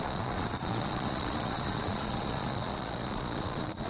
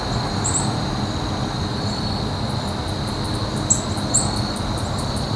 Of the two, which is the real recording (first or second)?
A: second